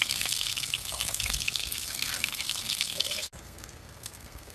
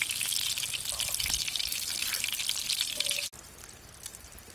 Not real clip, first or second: first